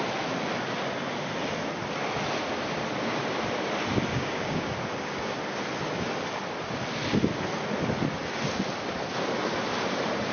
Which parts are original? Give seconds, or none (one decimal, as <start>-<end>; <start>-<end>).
0.0-4.1; 4.7-10.3